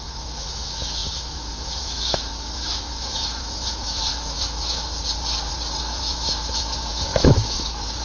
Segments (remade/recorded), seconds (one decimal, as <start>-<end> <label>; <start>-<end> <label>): 0.0-4.9 remade; 4.9-5.8 recorded; 5.8-8.0 remade